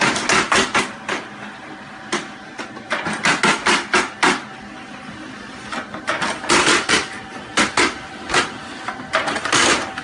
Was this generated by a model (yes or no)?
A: no